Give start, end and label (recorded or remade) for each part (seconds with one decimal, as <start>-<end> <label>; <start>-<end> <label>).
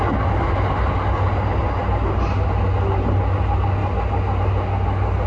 0.0-5.3 recorded